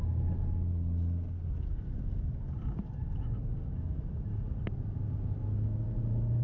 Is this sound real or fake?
real